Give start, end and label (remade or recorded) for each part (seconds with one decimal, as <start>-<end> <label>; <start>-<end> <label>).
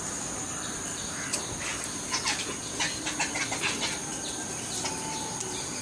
0.0-5.8 recorded